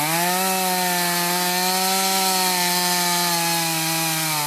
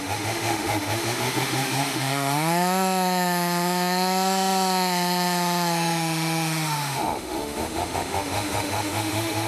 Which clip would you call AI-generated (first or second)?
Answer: second